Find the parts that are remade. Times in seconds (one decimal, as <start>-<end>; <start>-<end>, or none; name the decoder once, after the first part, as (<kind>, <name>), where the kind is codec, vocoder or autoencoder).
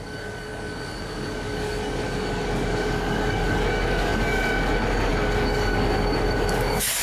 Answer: 0.0-7.0 (codec, DAC)